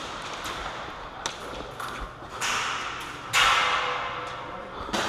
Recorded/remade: recorded